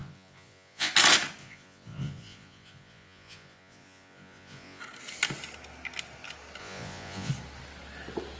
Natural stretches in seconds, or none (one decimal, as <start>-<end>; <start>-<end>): 0.9-1.4; 4.8-6.6; 7.3-8.4